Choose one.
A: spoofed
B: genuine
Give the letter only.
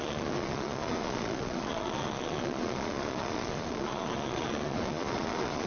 A